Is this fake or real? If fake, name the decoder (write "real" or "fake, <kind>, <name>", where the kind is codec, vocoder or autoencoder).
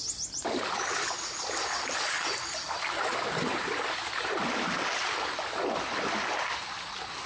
real